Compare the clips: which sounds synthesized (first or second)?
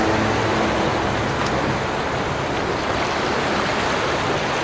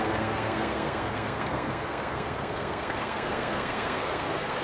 second